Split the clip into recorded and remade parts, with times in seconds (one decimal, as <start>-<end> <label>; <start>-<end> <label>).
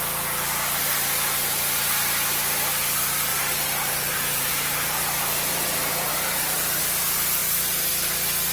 0.0-3.3 recorded; 3.3-4.9 remade; 4.9-6.1 recorded; 6.1-6.8 remade; 6.8-7.4 recorded; 7.4-7.9 remade; 7.9-8.5 recorded